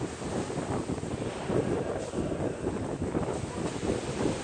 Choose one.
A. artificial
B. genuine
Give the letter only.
B